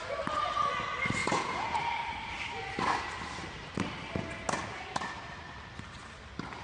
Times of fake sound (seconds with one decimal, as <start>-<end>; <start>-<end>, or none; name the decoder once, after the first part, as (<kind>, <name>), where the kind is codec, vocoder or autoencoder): 1.2-1.8 (vocoder, Vocos)